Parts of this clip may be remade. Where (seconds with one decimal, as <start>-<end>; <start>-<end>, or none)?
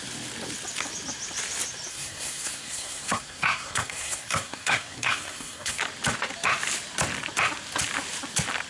1.9-5.8